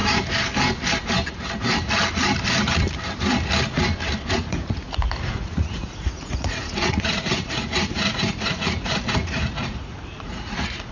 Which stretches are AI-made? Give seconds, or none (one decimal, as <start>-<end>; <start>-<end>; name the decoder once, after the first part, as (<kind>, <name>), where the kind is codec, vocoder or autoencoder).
4.3-10.9 (vocoder, Vocos)